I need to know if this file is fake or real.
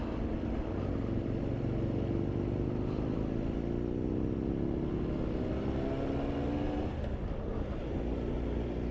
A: real